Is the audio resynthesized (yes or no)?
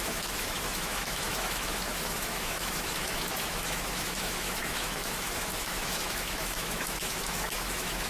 yes